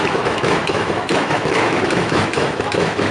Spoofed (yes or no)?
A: yes